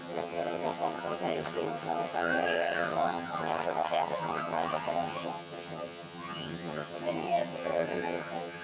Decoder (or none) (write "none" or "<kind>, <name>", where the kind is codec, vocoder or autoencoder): vocoder, HiFi-GAN